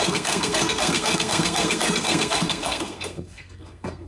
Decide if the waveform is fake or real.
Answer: fake